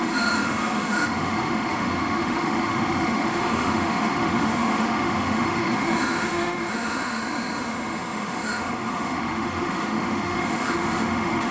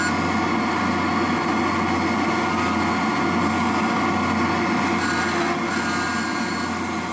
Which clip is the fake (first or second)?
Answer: first